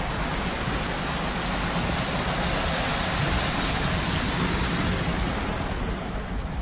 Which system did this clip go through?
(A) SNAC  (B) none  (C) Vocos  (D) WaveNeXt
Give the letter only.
B